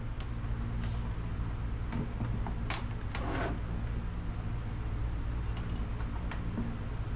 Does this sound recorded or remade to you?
recorded